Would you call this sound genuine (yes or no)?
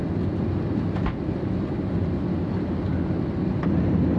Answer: yes